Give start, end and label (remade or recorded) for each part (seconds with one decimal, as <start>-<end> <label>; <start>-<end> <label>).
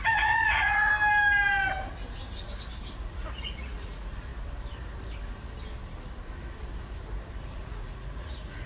0.0-0.9 remade; 0.9-3.0 recorded; 3.0-4.3 remade; 4.3-7.4 recorded; 7.4-8.7 remade